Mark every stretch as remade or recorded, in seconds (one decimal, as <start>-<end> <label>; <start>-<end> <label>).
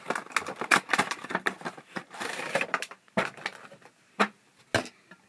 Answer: 0.0-0.7 recorded; 0.7-2.9 remade; 2.9-5.3 recorded